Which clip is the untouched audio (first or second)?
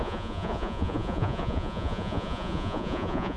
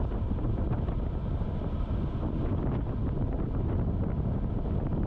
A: second